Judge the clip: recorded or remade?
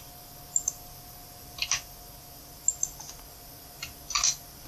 recorded